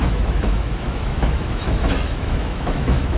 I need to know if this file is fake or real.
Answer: fake